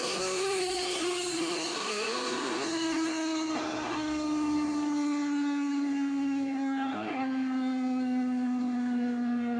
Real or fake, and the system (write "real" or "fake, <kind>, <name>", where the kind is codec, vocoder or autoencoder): fake, codec, SNAC